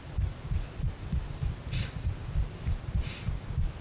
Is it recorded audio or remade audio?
recorded